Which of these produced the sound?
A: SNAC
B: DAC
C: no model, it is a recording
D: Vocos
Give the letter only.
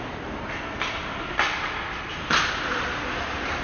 C